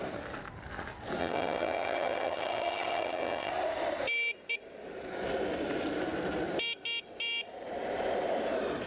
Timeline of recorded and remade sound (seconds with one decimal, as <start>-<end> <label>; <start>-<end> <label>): 0.0-1.2 recorded; 1.2-3.5 remade; 3.5-8.9 recorded